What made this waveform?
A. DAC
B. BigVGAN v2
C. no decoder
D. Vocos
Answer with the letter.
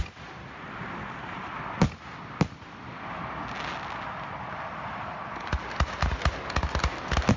C